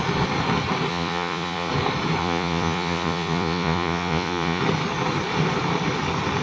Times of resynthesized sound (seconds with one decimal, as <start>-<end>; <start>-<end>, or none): 0.9-1.7; 2.2-4.6